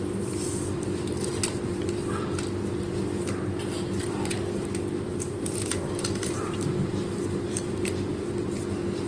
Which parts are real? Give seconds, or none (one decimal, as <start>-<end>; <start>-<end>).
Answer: 0.0-5.1; 7.9-9.1